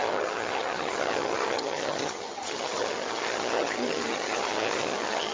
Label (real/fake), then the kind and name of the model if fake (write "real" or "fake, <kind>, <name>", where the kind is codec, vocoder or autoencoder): fake, vocoder, HiFi-GAN